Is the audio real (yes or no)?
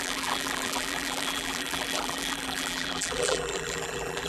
no